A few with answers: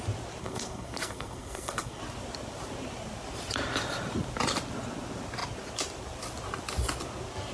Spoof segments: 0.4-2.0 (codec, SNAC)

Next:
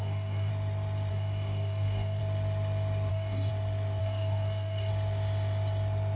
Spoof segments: 0.0-0.5 (codec, DAC); 1.1-2.2; 3.1-3.5; 4.0-4.9

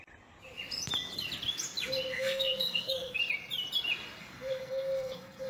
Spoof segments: 2.1-3.2 (codec, SNAC); 4.2-5.5

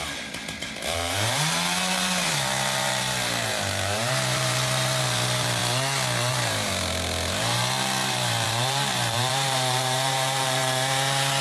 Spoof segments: 0.0-5.6 (vocoder, BigVGAN v2); 6.3-10.6

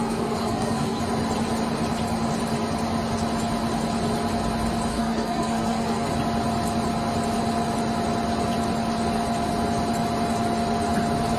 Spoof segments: 0.0-1.0 (codec, SNAC); 4.9-6.1

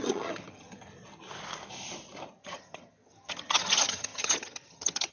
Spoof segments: 0.0-0.9 (vocoder, HiFi-GAN); 2.4-5.1

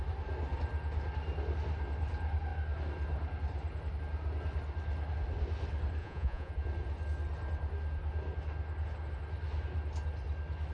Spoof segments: 6.0-6.5 (vocoder, Vocos)

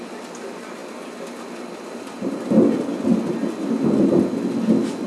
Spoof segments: none